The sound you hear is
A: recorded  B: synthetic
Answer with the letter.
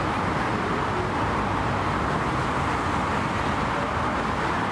A